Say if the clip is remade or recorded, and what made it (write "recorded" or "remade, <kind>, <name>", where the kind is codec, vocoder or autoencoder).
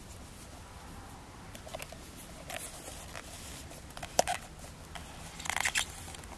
recorded